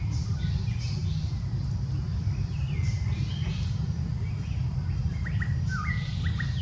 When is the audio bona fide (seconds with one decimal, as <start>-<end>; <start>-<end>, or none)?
0.0-2.1; 6.1-6.6